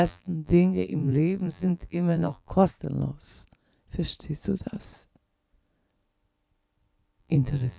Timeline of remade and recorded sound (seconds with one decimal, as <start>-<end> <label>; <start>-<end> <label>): 0.0-2.5 remade; 2.5-7.2 recorded; 7.2-7.8 remade